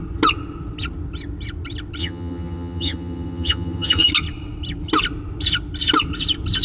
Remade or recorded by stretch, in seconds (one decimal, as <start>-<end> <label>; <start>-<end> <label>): 0.0-2.0 recorded; 2.0-4.1 remade; 4.1-6.6 recorded